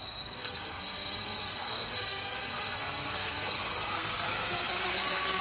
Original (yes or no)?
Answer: no